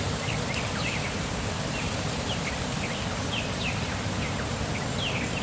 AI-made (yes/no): no